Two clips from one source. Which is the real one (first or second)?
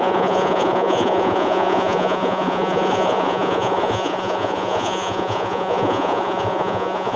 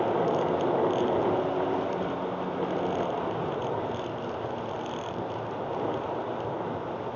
second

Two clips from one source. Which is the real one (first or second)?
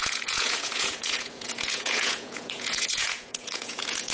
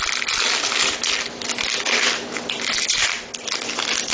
second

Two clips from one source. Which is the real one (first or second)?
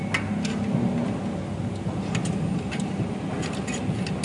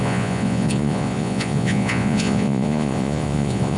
first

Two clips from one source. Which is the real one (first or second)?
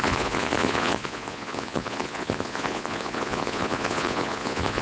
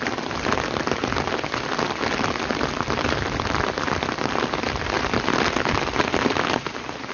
second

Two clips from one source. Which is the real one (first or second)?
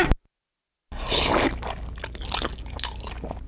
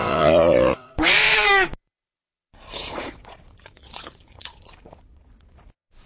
first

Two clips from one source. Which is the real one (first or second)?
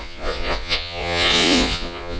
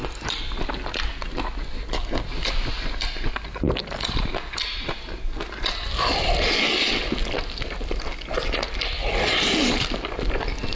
second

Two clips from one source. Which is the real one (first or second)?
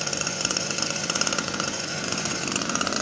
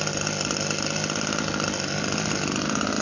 second